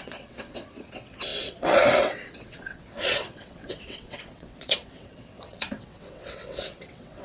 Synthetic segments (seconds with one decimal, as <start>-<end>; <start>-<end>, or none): 0.0-7.2